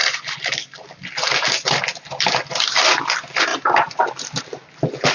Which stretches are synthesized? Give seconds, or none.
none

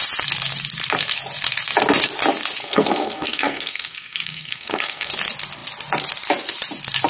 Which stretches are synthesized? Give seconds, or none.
2.6-5.1 (codec, SNAC)

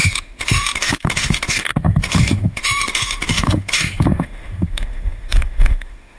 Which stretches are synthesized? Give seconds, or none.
0.0-6.2 (autoencoder, DAC-VAE)